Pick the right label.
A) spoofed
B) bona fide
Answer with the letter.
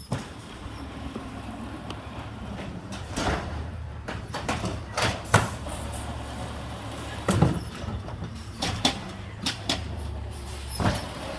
A